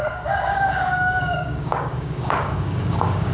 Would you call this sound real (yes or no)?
no